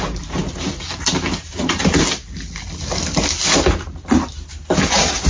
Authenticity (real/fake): real